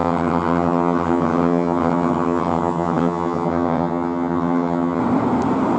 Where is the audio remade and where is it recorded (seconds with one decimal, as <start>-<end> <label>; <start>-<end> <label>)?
0.0-5.0 remade; 5.0-5.8 recorded